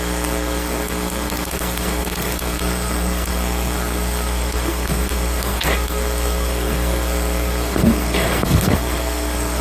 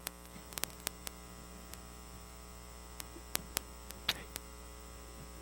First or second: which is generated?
first